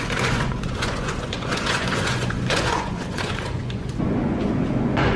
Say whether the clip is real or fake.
fake